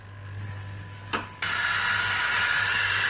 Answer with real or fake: real